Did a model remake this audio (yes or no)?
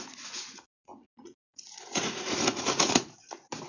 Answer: yes